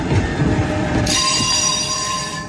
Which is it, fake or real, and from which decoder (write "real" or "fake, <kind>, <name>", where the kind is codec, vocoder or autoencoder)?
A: fake, vocoder, BigVGAN v2